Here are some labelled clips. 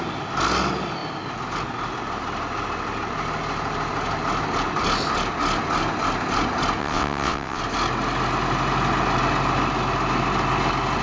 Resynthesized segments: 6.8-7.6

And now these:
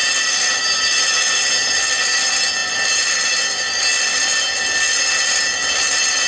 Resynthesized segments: none

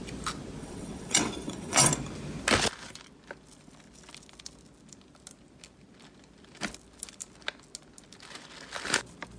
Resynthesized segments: 0.6-1.9